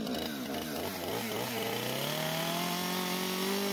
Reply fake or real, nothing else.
real